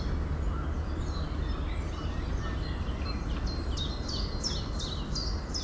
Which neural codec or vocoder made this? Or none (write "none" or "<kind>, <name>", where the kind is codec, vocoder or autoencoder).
none